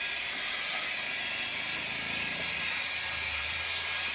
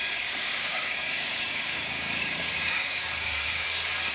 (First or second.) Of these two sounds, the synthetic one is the second